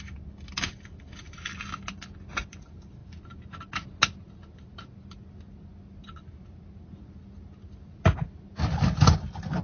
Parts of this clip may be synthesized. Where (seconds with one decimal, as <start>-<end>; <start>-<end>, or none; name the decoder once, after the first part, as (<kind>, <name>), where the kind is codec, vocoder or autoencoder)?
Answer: none